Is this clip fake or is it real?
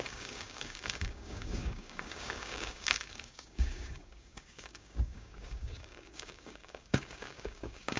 fake